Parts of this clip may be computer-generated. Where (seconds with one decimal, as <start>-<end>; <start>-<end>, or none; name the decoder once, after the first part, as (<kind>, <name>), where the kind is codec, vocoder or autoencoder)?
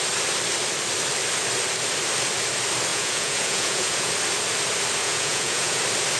2.9-4.1 (vocoder, Vocos); 5.0-5.8